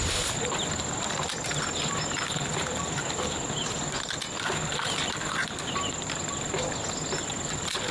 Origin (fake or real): real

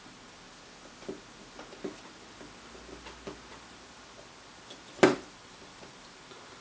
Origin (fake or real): real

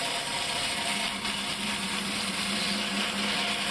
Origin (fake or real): real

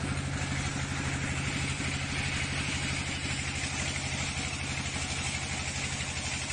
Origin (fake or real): real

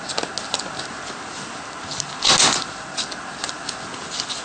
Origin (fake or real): real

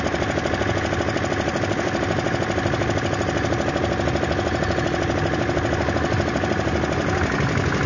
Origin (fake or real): real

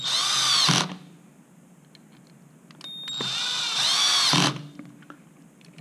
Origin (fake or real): real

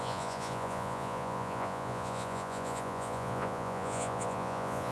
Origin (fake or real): fake